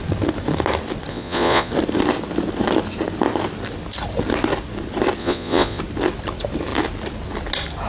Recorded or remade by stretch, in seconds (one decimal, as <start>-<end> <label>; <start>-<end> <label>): 0.0-1.1 recorded; 1.1-1.7 remade; 1.7-5.2 recorded; 5.2-5.8 remade; 5.8-7.9 recorded